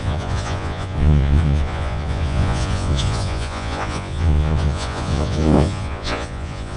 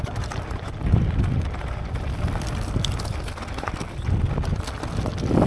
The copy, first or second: first